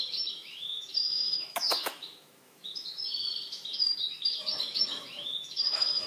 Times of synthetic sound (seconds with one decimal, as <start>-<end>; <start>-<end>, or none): 0.0-6.1

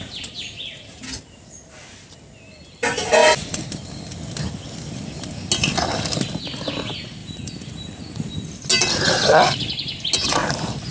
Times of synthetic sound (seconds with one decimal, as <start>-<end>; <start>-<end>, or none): 3.2-3.9; 7.2-8.5

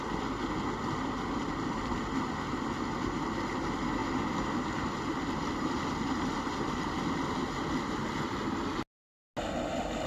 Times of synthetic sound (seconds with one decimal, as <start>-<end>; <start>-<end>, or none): none

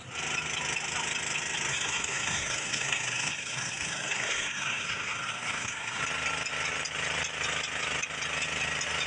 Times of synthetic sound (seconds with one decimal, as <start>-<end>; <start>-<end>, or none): 1.7-6.0

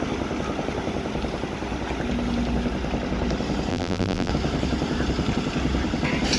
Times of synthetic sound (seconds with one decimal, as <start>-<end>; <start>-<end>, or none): 3.7-4.3